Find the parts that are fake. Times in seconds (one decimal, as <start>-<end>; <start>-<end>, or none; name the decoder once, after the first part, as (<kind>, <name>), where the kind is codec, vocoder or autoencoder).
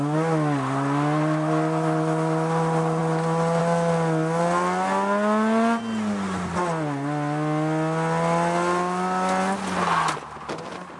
none